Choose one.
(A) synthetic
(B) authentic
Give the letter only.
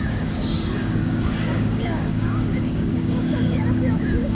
A